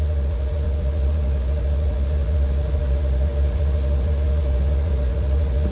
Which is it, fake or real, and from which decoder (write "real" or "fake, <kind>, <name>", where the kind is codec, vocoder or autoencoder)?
fake, vocoder, Vocos